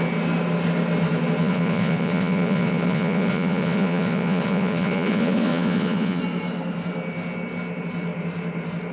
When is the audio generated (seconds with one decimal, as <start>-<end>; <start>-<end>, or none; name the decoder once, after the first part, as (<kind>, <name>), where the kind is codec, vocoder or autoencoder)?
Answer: 1.4-6.2 (vocoder, Vocos)